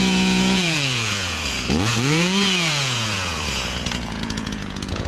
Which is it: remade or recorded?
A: remade